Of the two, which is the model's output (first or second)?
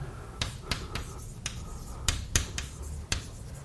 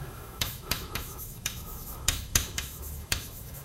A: second